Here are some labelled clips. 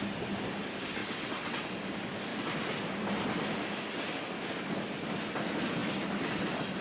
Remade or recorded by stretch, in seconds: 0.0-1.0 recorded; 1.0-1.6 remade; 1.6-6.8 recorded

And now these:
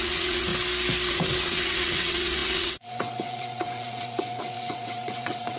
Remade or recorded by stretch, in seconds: 0.0-0.5 remade; 0.5-1.1 recorded; 1.1-5.6 remade

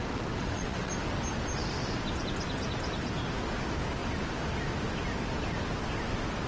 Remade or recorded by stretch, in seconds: 0.0-0.9 remade; 0.9-6.5 recorded

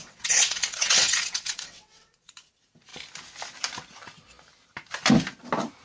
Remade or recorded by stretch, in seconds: 0.0-2.3 remade; 2.3-5.8 recorded

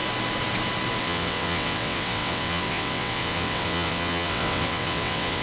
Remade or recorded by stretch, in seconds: 0.0-1.0 recorded; 1.0-5.4 remade